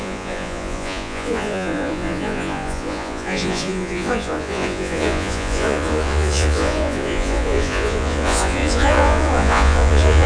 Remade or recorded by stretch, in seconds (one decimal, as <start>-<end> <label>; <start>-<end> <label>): 0.0-10.3 remade